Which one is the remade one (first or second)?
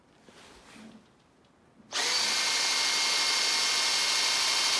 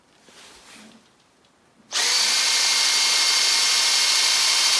second